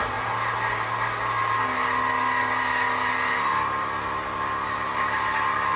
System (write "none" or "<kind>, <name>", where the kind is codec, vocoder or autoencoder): none